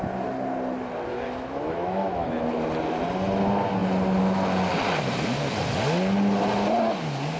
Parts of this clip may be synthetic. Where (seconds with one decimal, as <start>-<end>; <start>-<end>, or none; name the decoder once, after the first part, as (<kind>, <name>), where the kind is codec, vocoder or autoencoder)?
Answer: 1.1-2.3 (autoencoder, DAC-VAE)